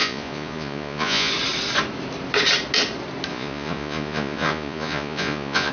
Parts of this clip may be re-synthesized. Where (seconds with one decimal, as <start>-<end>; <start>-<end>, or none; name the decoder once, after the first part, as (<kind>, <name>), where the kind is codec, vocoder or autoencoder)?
0.0-1.3 (vocoder, Vocos); 3.3-5.7